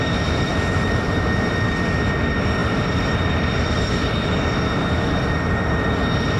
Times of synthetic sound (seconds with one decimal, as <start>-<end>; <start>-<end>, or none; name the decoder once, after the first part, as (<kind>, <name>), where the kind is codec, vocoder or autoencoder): none